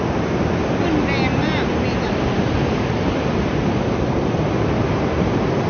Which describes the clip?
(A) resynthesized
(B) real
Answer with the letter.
B